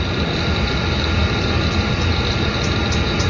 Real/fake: real